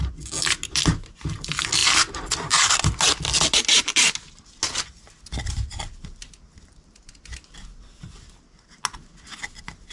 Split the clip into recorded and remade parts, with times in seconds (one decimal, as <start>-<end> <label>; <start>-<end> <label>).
0.0-9.9 recorded